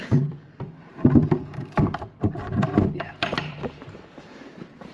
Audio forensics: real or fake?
fake